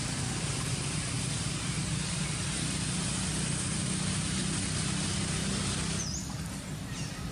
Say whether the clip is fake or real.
real